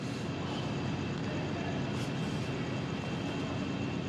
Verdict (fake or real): real